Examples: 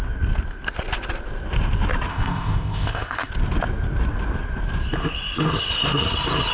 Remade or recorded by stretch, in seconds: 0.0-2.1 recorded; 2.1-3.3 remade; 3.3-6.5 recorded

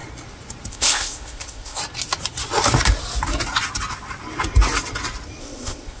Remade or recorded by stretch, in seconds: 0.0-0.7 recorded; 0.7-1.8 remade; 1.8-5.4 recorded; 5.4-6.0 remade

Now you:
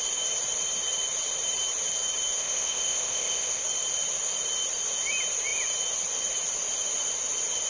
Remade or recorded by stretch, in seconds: 0.0-2.4 recorded; 2.4-3.6 remade; 3.6-7.7 recorded

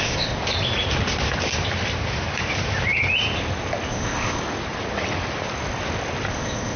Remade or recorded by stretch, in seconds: 0.0-0.4 remade; 0.4-3.9 recorded; 3.9-4.4 remade; 4.4-6.3 recorded; 6.3-6.8 remade

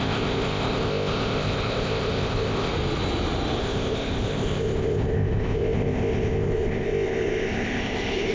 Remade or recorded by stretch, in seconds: 0.0-2.7 remade; 2.7-3.6 recorded; 3.6-8.3 remade

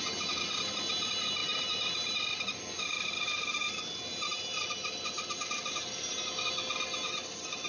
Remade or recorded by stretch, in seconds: 0.0-7.7 recorded

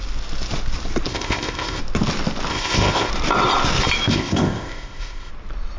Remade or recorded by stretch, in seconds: 0.0-1.1 recorded; 1.1-1.8 remade; 1.8-2.5 recorded; 2.5-3.1 remade; 3.1-4.1 recorded; 4.1-5.3 remade; 5.3-5.8 recorded